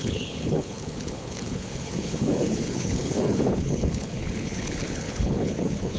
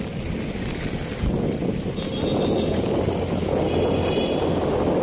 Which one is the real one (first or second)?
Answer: second